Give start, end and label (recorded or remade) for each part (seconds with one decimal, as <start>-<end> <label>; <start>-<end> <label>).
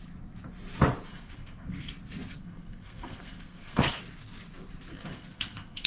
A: 0.0-1.1 recorded; 1.1-1.9 remade; 1.9-2.3 recorded; 2.3-4.0 remade; 4.0-4.9 recorded; 4.9-5.9 remade